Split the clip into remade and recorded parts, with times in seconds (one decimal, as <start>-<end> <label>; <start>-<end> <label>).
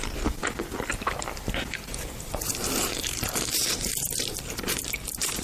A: 0.0-0.4 remade; 0.4-1.7 recorded; 1.7-5.4 remade